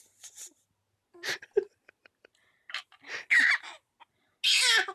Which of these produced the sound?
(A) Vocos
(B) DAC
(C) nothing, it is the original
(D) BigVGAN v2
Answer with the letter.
C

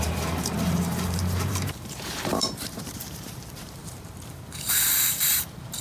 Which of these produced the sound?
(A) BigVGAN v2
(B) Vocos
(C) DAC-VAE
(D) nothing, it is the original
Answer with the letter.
A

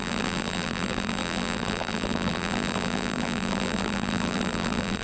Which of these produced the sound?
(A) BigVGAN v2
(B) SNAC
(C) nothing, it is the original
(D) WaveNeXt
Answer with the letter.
A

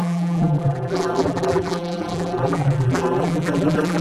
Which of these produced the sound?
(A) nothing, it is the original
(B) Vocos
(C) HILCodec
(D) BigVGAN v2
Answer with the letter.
D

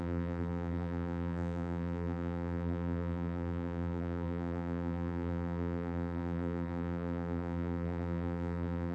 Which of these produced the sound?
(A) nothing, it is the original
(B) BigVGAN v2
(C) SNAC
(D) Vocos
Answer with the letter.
B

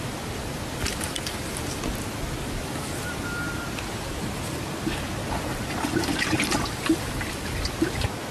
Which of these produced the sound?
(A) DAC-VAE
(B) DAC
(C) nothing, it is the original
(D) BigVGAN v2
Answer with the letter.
C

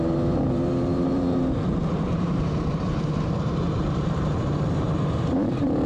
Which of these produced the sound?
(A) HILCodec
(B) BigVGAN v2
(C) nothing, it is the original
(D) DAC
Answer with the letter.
B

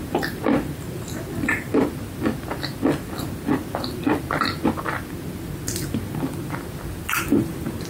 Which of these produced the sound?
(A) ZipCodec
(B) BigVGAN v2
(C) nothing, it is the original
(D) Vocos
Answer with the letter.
C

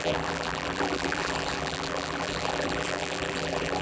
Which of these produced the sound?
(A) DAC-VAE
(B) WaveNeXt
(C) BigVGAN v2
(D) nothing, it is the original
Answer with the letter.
C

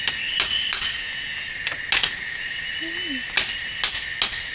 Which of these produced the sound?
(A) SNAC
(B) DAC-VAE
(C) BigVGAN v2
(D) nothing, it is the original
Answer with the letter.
D